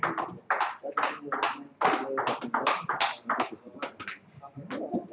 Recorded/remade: recorded